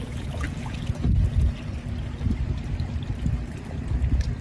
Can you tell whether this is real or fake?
real